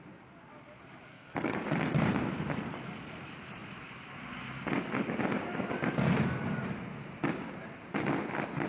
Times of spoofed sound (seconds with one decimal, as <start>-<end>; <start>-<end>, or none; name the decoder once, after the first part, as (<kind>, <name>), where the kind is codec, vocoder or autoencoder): 1.1-1.6 (codec, SNAC)